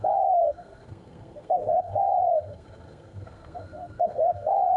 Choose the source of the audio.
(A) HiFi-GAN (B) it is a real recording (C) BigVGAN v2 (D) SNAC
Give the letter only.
D